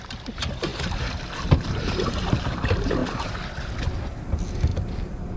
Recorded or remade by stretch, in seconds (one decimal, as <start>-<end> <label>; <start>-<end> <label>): 0.0-0.7 recorded; 0.7-2.6 remade; 2.6-4.7 recorded; 4.7-5.4 remade